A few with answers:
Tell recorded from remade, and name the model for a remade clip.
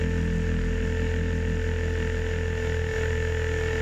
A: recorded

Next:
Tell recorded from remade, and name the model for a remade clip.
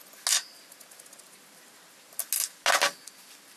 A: recorded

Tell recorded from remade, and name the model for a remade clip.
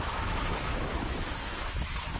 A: remade, autoencoder, DAC-VAE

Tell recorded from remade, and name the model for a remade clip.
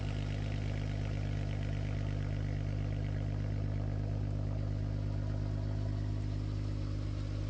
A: recorded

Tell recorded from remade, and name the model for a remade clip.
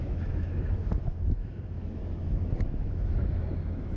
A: remade, autoencoder, DAC-VAE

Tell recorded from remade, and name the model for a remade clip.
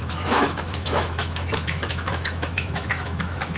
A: remade, autoencoder, DAC-VAE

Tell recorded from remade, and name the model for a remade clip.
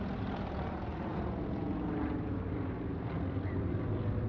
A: recorded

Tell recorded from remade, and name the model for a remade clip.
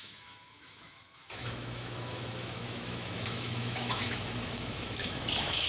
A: remade, autoencoder, DAC-VAE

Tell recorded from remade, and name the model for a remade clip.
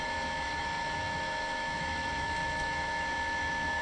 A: remade, autoencoder, DAC-VAE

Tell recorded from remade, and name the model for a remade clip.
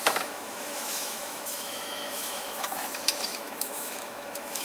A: remade, autoencoder, DAC-VAE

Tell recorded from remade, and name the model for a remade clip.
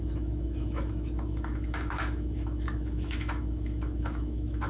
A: remade, autoencoder, DAC-VAE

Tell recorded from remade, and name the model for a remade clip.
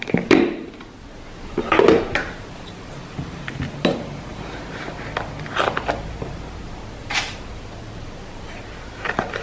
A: recorded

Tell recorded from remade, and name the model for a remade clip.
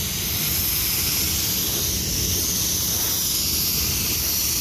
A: recorded